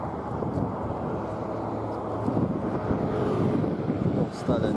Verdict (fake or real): real